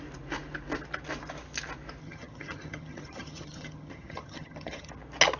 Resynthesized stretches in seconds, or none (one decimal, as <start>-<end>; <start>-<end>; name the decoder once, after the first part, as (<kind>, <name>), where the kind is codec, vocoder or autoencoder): 2.0-4.9 (vocoder, HiFi-GAN)